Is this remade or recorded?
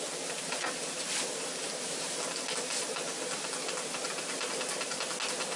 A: recorded